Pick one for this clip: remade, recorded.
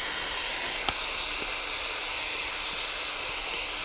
recorded